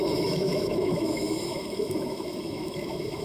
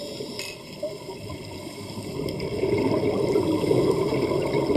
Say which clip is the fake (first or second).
first